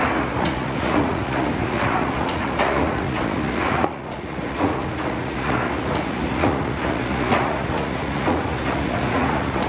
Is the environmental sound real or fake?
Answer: fake